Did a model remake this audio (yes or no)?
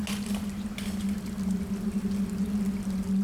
no